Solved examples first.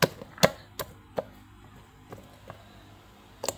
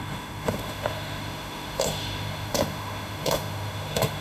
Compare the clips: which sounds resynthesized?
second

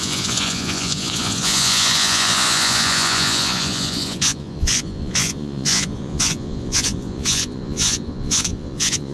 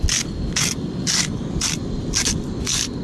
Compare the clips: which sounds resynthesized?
first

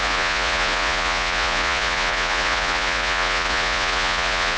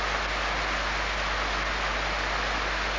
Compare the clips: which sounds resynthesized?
first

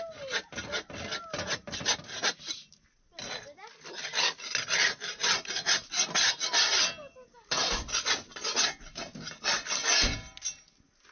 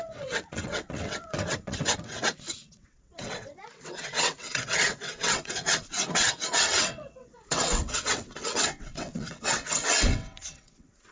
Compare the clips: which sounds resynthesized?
second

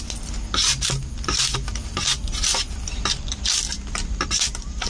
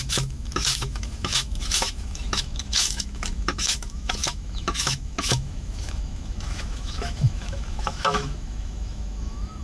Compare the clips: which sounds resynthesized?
second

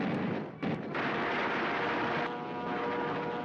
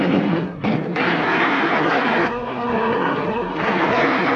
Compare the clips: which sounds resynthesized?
second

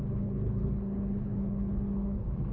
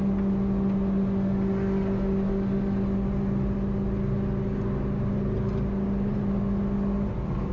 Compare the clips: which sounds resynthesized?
first